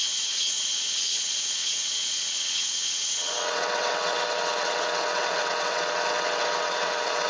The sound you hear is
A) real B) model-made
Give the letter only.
B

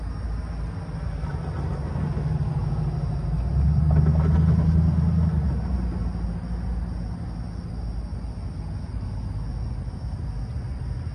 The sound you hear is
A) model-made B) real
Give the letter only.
B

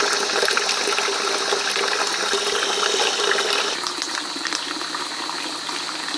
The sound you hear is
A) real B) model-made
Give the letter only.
A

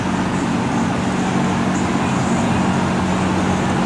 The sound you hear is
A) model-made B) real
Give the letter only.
B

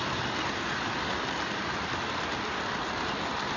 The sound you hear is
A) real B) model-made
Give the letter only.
A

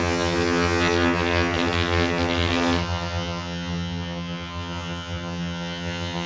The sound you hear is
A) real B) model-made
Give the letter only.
B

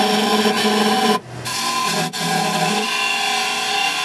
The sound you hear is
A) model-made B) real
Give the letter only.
B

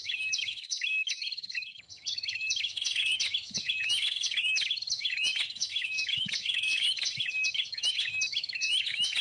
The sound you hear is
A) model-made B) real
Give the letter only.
A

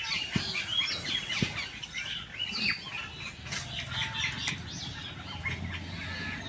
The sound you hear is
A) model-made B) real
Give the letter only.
B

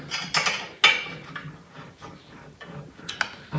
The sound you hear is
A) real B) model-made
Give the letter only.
A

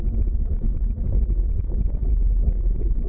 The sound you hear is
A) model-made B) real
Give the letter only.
B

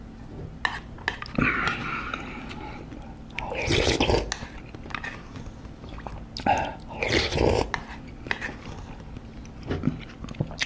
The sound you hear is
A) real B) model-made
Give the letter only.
A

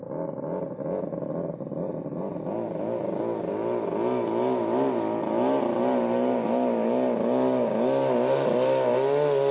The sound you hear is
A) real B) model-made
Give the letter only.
A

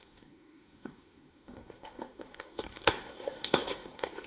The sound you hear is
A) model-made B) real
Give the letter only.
A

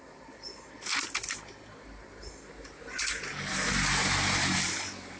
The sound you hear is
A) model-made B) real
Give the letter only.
B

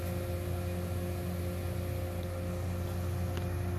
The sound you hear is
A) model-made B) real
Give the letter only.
B